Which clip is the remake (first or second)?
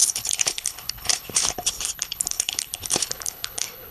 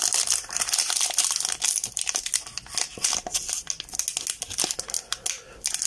first